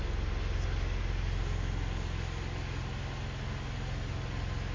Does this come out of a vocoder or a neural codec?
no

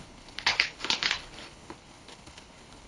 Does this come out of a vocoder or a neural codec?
yes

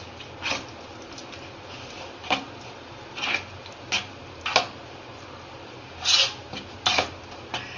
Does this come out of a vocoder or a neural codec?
no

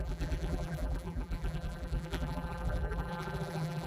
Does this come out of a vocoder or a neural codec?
yes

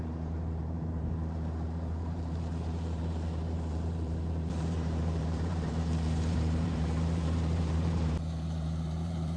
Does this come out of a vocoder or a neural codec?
yes